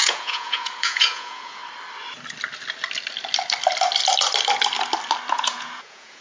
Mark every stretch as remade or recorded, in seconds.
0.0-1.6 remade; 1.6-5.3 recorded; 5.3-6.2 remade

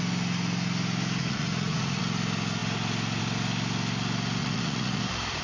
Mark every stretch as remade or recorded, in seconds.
0.0-1.2 recorded; 1.2-2.0 remade; 2.0-4.4 recorded; 4.4-5.0 remade; 5.0-5.4 recorded

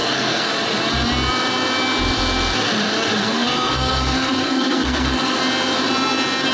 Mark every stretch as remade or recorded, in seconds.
0.0-0.5 remade; 0.5-3.2 recorded; 3.2-5.4 remade; 5.4-6.5 recorded

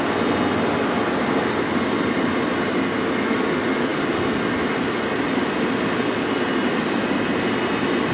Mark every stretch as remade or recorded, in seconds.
0.0-8.1 recorded

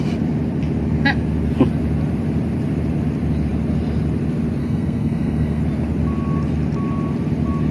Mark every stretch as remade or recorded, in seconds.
0.0-4.6 recorded; 4.6-5.6 remade; 5.6-7.7 recorded

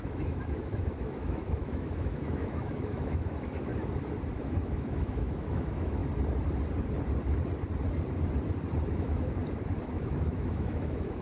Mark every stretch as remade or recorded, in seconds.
0.0-3.7 remade; 3.7-4.4 recorded; 4.4-6.0 remade; 6.0-8.9 recorded; 8.9-9.4 remade; 9.4-9.9 recorded; 9.9-11.2 remade

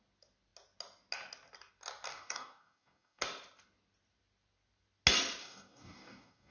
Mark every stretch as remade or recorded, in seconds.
0.0-2.1 recorded; 2.1-3.2 remade; 3.2-5.4 recorded; 5.4-6.5 remade

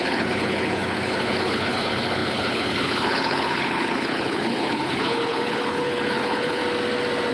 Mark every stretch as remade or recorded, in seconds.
0.0-6.6 remade; 6.6-7.3 recorded